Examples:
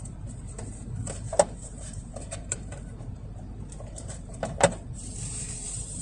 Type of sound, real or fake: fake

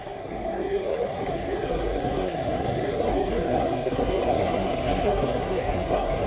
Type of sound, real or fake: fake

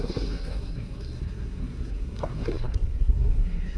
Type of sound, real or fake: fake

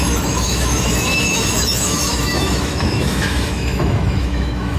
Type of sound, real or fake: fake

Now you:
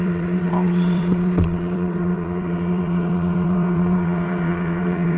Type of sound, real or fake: fake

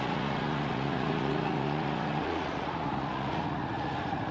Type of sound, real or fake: fake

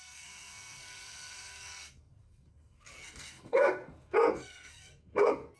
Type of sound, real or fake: fake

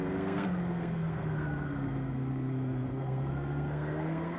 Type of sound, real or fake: fake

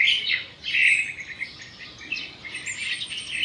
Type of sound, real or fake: real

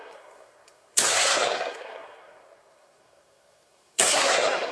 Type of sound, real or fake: fake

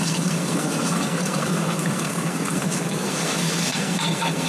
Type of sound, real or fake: fake